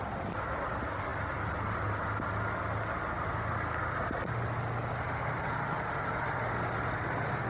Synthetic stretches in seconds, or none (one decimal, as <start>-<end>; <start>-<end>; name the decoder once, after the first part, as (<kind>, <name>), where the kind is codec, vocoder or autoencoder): none